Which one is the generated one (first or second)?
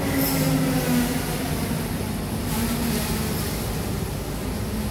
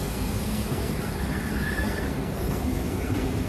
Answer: second